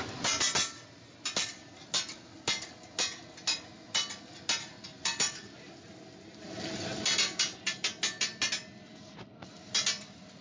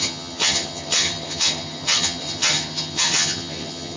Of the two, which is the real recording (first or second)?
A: first